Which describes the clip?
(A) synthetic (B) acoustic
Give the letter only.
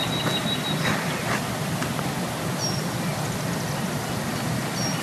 A